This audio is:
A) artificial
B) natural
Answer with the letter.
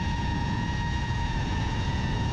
A